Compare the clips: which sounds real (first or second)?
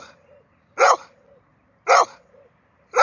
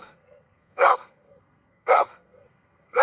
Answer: first